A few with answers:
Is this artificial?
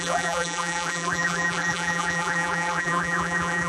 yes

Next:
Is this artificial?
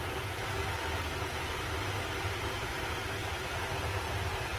no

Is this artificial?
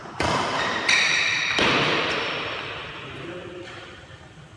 yes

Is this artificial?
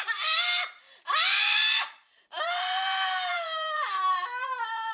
yes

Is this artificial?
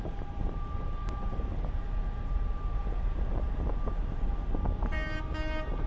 yes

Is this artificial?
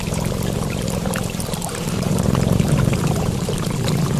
yes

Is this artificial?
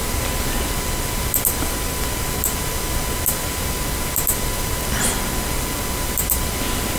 no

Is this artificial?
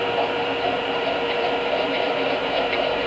yes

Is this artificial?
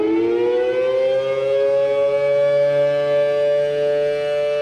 no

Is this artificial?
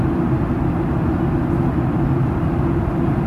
no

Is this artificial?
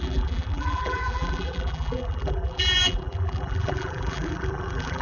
yes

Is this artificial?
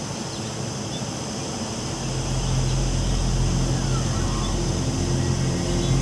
no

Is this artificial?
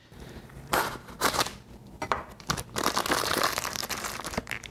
yes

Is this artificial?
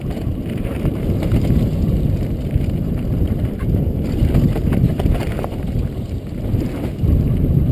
yes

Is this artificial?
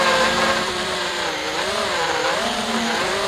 yes